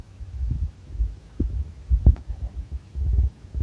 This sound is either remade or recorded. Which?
remade